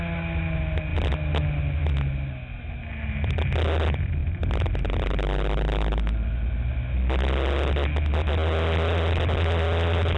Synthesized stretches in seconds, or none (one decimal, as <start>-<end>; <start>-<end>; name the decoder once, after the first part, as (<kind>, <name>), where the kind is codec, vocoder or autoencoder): none